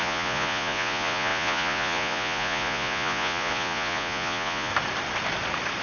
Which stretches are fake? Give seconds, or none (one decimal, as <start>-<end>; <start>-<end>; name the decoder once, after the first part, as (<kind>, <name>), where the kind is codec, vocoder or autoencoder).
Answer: 0.0-4.7 (vocoder, Vocos)